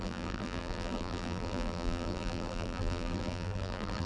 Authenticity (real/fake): fake